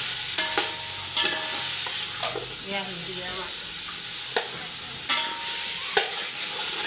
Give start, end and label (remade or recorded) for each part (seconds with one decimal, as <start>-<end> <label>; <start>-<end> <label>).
0.0-6.9 recorded